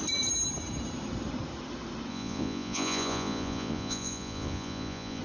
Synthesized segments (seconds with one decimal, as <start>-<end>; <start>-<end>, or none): 2.1-5.2